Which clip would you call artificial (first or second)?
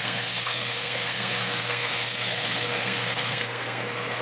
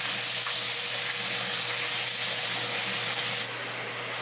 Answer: first